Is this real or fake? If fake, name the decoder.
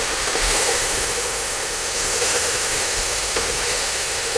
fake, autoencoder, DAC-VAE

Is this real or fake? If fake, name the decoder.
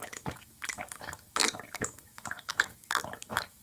fake, autoencoder, DAC-VAE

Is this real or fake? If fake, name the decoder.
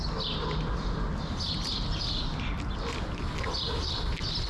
real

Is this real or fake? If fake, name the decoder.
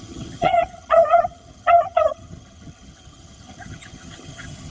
fake, vocoder, HiFi-GAN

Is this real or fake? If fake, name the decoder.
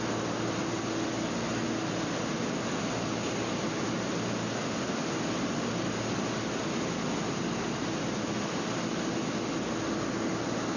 real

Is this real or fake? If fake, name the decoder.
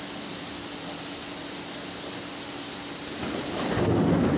real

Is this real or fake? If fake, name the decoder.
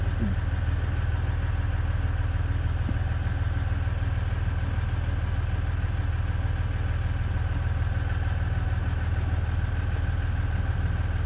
real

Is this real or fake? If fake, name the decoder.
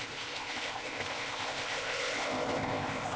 fake, codec, ZipCodec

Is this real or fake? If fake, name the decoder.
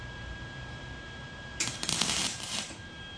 fake, vocoder, BigVGAN v2